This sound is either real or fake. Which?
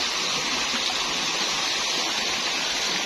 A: real